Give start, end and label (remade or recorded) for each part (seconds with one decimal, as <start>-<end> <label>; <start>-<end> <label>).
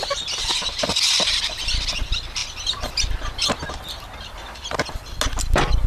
0.0-5.9 recorded